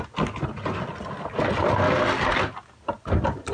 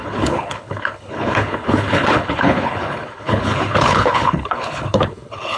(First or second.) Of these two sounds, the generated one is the second